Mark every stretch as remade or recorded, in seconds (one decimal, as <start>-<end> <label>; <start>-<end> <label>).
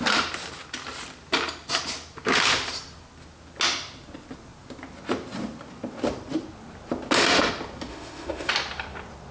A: 0.0-7.9 recorded; 7.9-8.5 remade; 8.5-9.3 recorded